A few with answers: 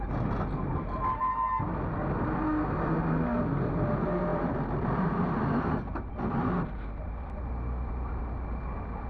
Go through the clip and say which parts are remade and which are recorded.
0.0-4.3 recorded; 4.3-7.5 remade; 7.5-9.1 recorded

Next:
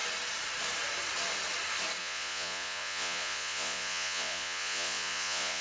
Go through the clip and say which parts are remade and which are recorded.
0.0-2.0 recorded; 2.0-5.6 remade

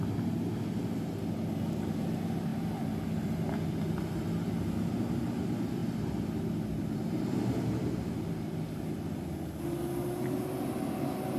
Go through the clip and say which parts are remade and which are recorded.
0.0-11.4 recorded

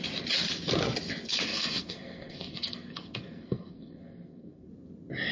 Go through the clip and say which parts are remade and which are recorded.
0.0-1.5 recorded; 1.5-4.7 remade; 4.7-5.3 recorded

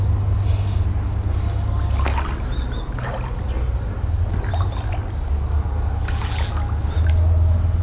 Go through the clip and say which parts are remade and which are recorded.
0.0-7.8 recorded

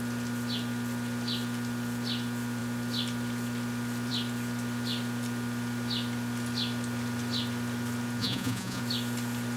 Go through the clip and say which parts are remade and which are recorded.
0.0-8.2 recorded; 8.2-8.8 remade; 8.8-9.6 recorded

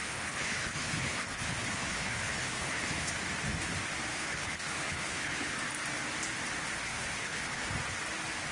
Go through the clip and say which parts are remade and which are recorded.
0.0-3.1 remade; 3.1-4.1 recorded; 4.1-5.5 remade; 5.5-6.9 recorded; 6.9-7.7 remade; 7.7-8.5 recorded

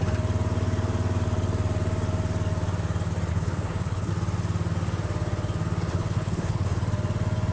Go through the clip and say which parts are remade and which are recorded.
0.0-3.3 recorded; 3.3-4.1 remade; 4.1-5.9 recorded; 5.9-6.8 remade; 6.8-7.5 recorded